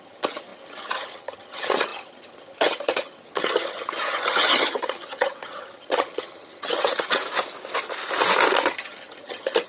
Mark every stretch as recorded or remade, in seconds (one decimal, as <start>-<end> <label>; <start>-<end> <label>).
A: 0.0-7.2 remade; 7.2-8.7 recorded; 8.7-9.7 remade